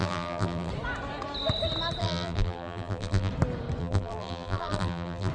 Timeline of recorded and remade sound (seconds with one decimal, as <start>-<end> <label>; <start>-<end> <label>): 0.0-0.7 remade; 0.7-2.0 recorded; 2.0-3.3 remade; 3.3-3.8 recorded; 3.8-5.3 remade